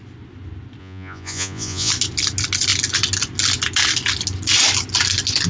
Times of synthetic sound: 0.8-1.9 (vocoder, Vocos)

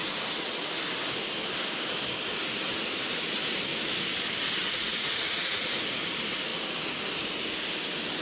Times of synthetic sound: 4.6-5.7 (vocoder, Vocos)

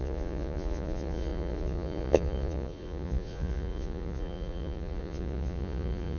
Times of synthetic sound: 0.0-6.2 (vocoder, Vocos)

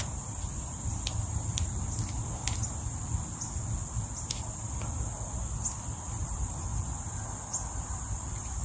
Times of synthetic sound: none

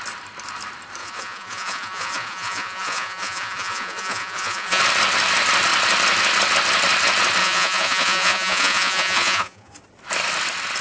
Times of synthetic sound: 1.0-4.8 (vocoder, Vocos); 7.4-9.7